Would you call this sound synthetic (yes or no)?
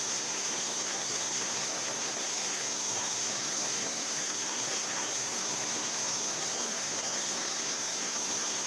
yes